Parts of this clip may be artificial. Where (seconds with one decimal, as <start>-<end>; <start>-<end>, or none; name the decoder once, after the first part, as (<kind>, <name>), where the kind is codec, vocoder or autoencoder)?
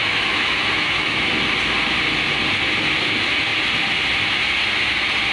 0.0-1.3 (autoencoder, DAC-VAE)